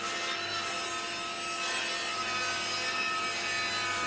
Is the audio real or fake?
real